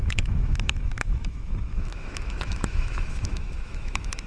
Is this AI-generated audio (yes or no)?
yes